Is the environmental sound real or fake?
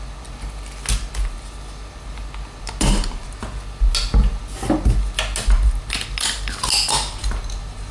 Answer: real